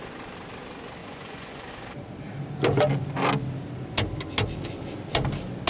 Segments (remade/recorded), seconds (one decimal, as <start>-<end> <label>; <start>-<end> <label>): 0.0-1.0 recorded; 1.0-1.7 remade; 1.7-5.7 recorded